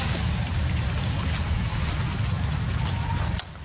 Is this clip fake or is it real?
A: real